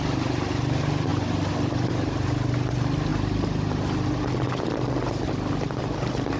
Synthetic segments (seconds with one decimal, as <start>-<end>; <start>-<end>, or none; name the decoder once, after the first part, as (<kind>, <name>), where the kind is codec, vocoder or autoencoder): none